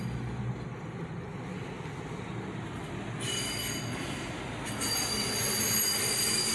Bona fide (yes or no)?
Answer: yes